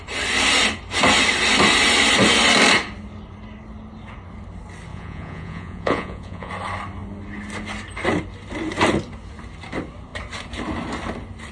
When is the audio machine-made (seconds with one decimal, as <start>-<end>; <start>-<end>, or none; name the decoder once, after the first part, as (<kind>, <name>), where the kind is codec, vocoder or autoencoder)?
4.9-6.5 (vocoder, Vocos)